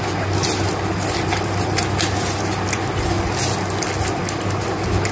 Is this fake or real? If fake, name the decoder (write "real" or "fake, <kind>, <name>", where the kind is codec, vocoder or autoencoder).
real